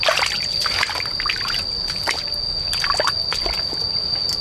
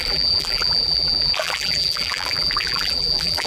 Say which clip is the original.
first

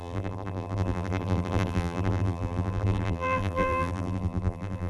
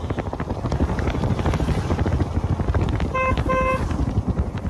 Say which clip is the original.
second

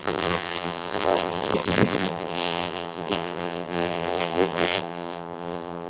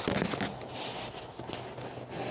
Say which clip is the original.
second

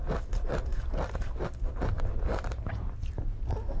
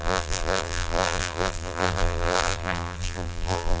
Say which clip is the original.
first